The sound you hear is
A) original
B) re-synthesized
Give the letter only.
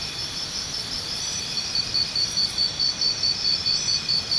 A